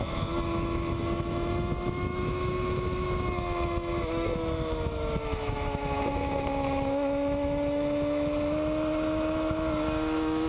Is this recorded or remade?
remade